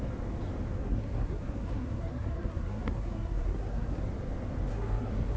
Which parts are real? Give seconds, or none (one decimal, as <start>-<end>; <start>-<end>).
0.0-0.8; 4.0-4.7